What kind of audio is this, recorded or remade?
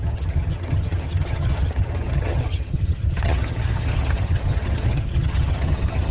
remade